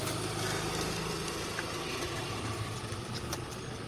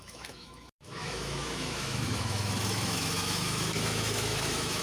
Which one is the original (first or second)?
first